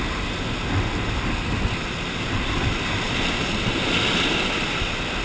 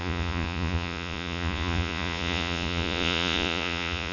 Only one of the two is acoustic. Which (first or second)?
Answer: first